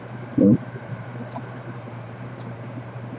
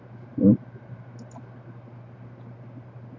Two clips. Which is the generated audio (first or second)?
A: first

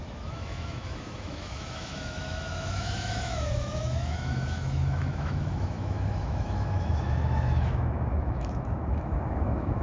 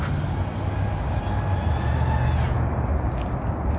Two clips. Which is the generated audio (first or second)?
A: first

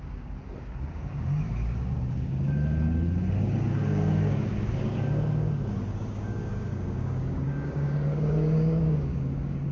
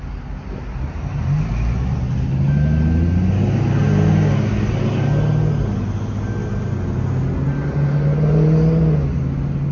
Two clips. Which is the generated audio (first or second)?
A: first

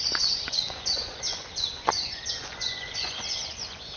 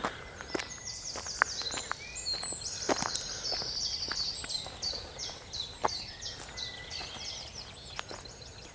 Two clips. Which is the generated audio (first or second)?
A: first